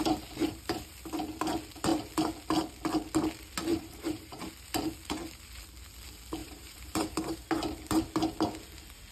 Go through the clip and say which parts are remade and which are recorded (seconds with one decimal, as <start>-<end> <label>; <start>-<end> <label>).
0.0-0.4 recorded; 0.4-1.0 remade; 1.0-3.7 recorded; 3.7-4.5 remade; 4.5-6.4 recorded; 6.4-7.4 remade; 7.4-9.1 recorded